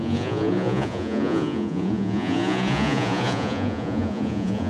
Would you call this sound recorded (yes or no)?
no